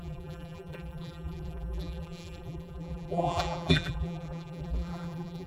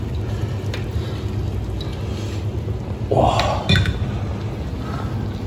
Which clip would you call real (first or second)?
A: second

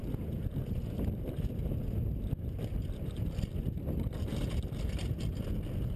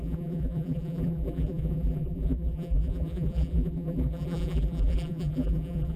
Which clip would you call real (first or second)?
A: first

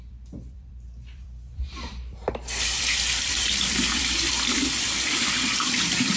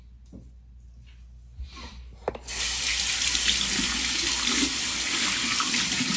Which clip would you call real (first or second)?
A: second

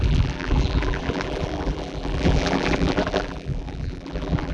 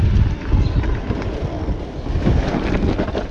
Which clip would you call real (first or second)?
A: second